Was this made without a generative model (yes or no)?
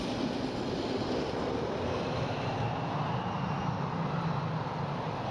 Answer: yes